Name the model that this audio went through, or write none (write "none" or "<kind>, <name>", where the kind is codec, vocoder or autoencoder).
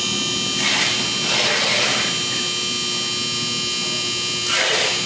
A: none